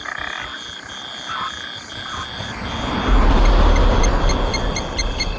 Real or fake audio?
real